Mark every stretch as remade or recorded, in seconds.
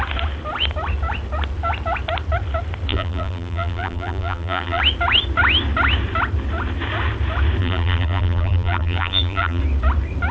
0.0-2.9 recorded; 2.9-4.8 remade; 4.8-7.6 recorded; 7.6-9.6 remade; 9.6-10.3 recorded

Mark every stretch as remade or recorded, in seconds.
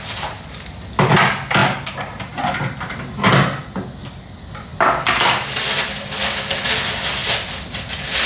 0.0-1.6 recorded; 1.6-2.4 remade; 2.4-8.3 recorded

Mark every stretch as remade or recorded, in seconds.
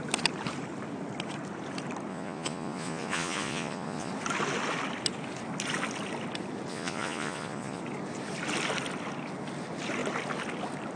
0.0-2.1 recorded; 2.1-4.1 remade; 4.1-6.7 recorded; 6.7-7.8 remade; 7.8-11.0 recorded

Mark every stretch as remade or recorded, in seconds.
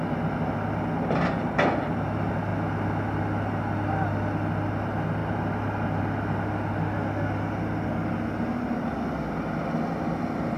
0.0-10.6 recorded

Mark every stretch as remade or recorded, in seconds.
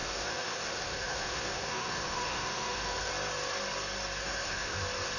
0.0-3.1 remade; 3.1-4.2 recorded; 4.2-4.8 remade; 4.8-5.2 recorded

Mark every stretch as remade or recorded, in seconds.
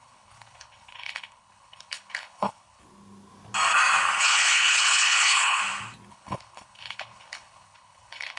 0.0-2.8 remade; 2.8-4.2 recorded; 4.2-5.6 remade; 5.6-6.1 recorded; 6.1-8.4 remade